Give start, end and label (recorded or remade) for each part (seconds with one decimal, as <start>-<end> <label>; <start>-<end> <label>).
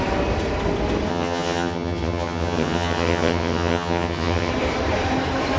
0.0-1.1 recorded; 1.1-4.5 remade; 4.5-5.6 recorded